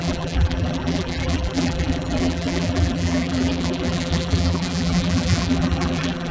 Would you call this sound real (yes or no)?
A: no